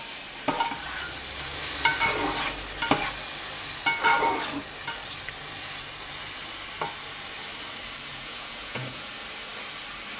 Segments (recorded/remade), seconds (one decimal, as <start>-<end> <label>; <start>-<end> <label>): 0.0-8.1 recorded; 8.1-9.1 remade; 9.1-10.2 recorded

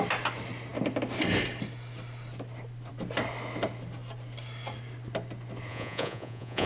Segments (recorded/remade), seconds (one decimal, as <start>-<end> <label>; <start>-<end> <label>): 0.0-5.7 recorded; 5.7-6.7 remade

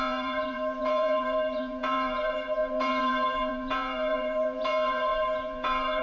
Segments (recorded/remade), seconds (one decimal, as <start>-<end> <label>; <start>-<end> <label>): 0.0-6.0 remade

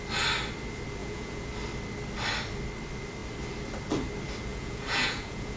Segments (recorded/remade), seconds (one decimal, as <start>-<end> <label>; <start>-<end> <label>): 0.0-1.0 recorded; 1.0-1.5 remade; 1.5-4.5 recorded; 4.5-5.6 remade

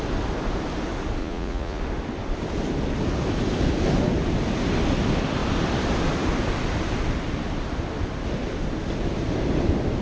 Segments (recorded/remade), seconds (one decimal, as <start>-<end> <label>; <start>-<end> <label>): 0.0-1.2 recorded; 1.2-1.8 remade; 1.8-10.0 recorded

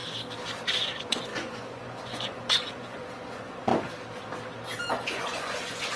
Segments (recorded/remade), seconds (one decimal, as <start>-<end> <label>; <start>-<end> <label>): 0.0-0.8 recorded; 0.8-3.7 remade; 3.7-4.9 recorded; 4.9-6.0 remade